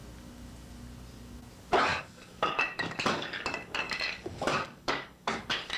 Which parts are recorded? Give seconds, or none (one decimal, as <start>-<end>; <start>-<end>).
0.0-1.9